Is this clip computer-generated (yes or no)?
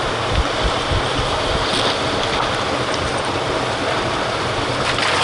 no